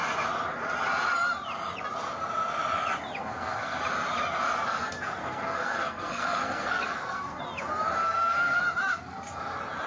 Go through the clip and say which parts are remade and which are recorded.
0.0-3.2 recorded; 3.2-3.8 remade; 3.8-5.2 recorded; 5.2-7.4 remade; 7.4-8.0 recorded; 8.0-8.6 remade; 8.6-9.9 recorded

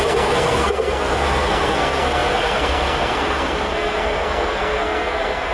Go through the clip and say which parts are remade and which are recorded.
0.0-5.5 remade